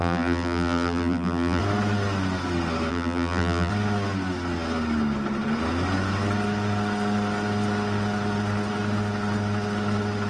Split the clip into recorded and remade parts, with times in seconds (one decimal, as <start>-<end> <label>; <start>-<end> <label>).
0.0-1.6 remade; 1.6-2.9 recorded; 2.9-3.7 remade; 3.7-10.3 recorded